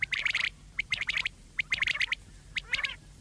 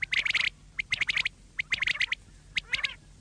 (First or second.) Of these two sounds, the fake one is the first